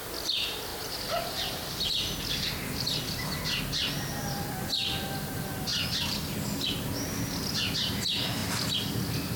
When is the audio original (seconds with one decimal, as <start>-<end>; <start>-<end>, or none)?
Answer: 0.0-9.4